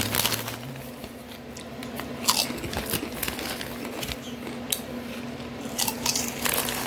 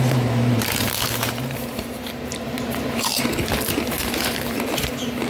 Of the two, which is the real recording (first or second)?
first